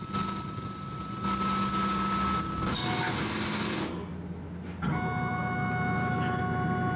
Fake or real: real